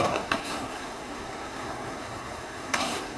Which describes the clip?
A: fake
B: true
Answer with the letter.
A